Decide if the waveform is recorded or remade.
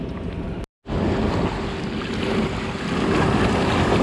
recorded